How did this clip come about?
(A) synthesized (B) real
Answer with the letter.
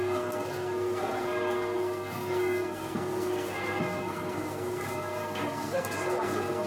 A